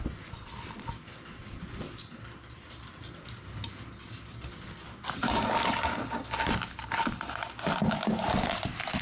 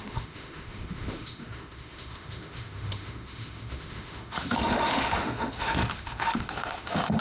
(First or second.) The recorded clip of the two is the first